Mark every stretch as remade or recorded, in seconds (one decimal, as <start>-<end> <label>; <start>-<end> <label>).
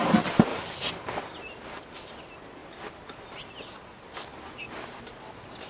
0.0-0.5 recorded; 0.5-1.2 remade; 1.2-5.7 recorded